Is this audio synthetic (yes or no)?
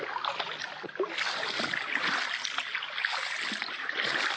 no